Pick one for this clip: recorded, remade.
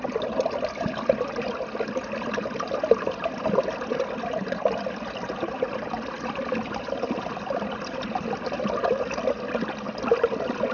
recorded